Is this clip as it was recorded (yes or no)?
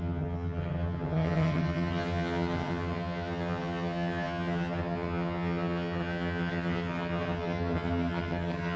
no